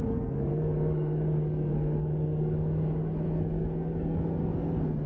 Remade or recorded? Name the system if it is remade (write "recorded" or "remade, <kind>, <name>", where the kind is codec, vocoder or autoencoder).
remade, codec, SNAC